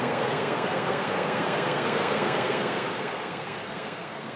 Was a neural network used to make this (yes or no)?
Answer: yes